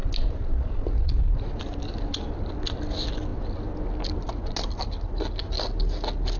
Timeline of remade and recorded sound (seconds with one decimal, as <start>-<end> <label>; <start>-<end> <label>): 0.0-6.4 recorded